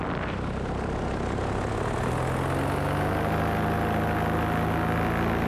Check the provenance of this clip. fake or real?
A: real